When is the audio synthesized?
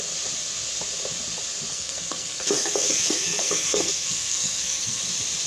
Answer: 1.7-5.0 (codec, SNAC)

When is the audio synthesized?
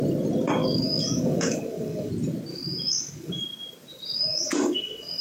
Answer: 0.6-2.1 (codec, DAC); 2.5-3.4; 3.9-5.2